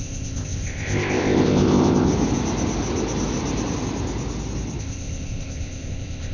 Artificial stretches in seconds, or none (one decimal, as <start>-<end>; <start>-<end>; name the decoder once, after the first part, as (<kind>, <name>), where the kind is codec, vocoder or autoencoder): 0.0-2.1 (codec, ZipCodec); 4.8-6.3